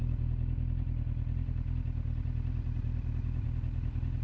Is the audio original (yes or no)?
yes